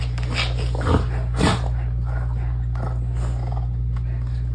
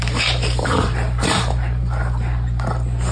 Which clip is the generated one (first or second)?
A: second